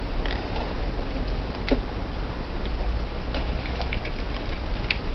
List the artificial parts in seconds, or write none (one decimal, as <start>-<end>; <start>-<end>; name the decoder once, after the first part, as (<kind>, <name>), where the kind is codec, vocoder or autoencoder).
3.1-4.0 (autoencoder, DAC-VAE)